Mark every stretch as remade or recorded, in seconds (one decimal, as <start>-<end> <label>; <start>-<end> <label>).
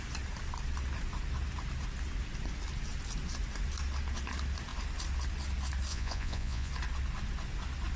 0.0-5.9 recorded; 5.9-6.7 remade; 6.7-8.0 recorded